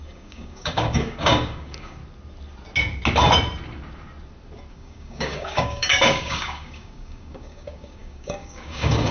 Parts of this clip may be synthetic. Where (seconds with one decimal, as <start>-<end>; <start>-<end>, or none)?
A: 0.0-2.0; 4.7-9.1